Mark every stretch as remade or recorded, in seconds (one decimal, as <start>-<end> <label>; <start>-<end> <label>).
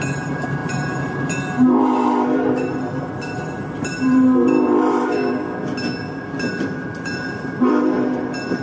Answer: 0.0-5.6 remade; 5.6-6.5 recorded; 6.5-8.6 remade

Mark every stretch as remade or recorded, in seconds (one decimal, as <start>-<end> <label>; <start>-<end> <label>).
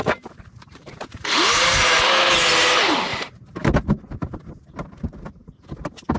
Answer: 0.0-2.1 remade; 2.1-6.2 recorded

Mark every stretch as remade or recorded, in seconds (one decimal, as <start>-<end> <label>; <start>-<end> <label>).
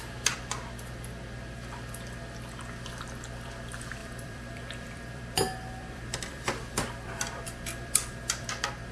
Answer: 0.0-4.0 recorded; 4.0-8.5 remade; 8.5-8.9 recorded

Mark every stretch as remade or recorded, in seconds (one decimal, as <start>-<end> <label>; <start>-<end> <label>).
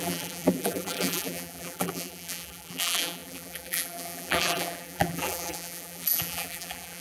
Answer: 0.0-7.0 remade